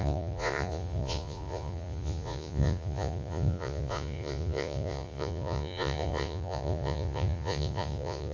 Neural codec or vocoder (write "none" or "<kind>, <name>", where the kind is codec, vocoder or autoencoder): vocoder, Vocos